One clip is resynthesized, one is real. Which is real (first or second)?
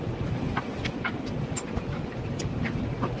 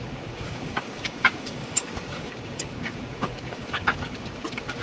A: first